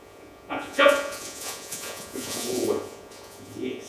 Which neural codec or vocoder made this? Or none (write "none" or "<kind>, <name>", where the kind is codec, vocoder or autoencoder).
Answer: vocoder, Vocos